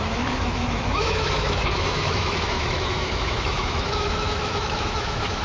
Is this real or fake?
fake